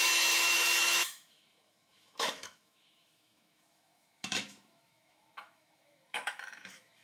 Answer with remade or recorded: remade